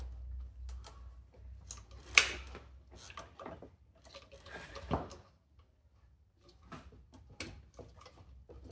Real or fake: real